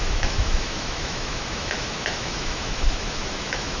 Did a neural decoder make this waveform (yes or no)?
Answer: yes